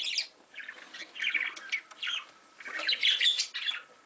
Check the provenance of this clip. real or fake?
real